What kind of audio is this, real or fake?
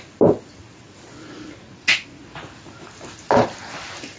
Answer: real